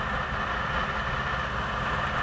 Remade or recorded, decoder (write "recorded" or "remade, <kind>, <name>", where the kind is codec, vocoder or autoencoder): recorded